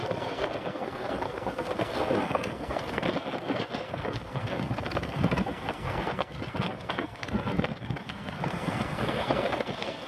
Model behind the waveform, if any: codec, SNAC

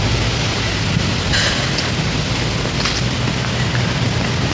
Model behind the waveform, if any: none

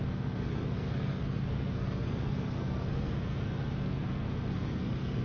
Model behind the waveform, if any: codec, SNAC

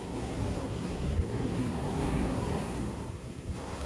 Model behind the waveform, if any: codec, SNAC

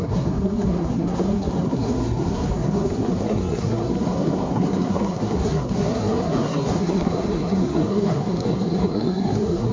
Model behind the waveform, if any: codec, SNAC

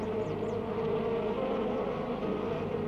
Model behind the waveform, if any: none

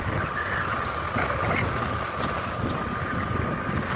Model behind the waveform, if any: none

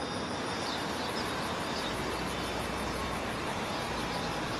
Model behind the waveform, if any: none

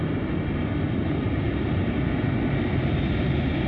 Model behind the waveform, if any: none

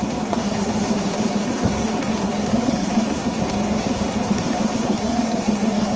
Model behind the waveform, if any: codec, SNAC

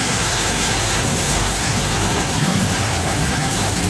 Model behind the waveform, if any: codec, SNAC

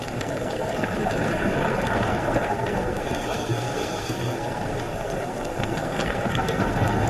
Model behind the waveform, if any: codec, SNAC